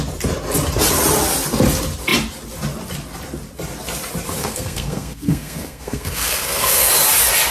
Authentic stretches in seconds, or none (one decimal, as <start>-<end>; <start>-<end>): 0.0-4.4; 6.9-7.5